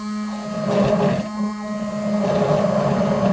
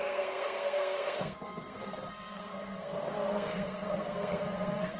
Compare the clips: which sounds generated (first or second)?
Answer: second